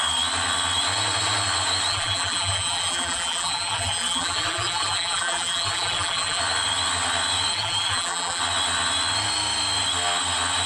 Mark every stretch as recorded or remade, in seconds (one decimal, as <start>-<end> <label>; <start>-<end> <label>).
0.0-1.9 recorded; 1.9-6.4 remade; 6.4-7.5 recorded; 7.5-8.4 remade; 8.4-10.7 recorded